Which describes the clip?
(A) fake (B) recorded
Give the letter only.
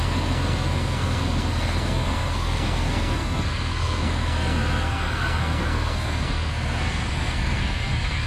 A